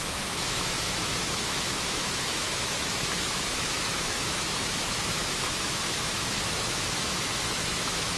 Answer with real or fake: fake